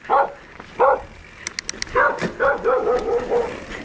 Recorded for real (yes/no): yes